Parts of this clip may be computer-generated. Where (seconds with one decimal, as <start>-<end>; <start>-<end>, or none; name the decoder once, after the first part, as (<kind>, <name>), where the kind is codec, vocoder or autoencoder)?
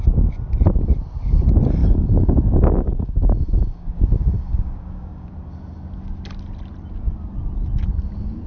1.8-5.3 (codec, DAC)